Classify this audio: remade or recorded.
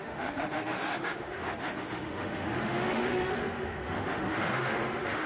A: remade